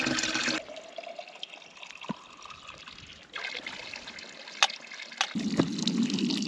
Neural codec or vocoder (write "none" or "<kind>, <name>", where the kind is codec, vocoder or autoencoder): none